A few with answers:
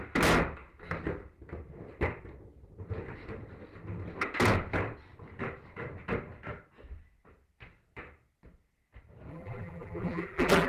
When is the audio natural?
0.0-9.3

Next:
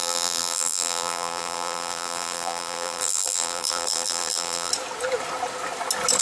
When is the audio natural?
4.7-6.2

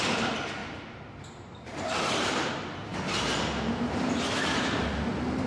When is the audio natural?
0.0-0.6; 2.5-2.9; 4.9-5.5

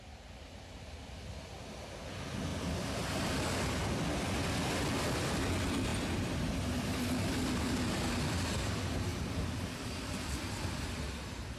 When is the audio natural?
0.0-9.1; 10.7-11.6

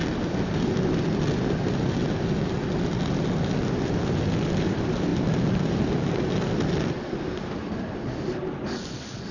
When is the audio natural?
0.0-4.6; 5.1-9.3